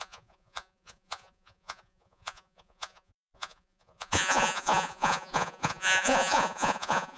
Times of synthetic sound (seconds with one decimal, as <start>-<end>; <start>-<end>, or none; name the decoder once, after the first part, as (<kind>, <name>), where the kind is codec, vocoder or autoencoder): 0.0-7.2 (vocoder, Vocos)

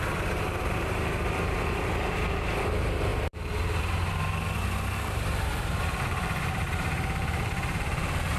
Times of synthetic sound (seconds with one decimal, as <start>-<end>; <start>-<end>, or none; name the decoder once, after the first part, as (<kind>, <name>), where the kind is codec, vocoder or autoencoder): 0.0-8.4 (vocoder, BigVGAN v2)